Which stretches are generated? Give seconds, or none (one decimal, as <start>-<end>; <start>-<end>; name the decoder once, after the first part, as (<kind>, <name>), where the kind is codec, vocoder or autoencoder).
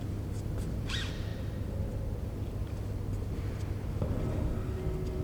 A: 4.3-4.8 (autoencoder, DAC-VAE)